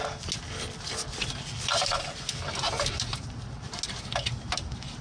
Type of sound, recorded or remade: recorded